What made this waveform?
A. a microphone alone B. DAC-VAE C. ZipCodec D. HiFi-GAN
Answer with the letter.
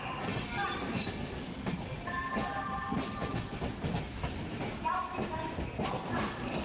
A